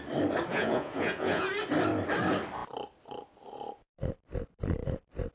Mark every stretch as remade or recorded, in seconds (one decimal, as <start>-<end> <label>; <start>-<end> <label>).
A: 0.0-0.5 recorded; 0.5-1.5 remade; 1.5-5.3 recorded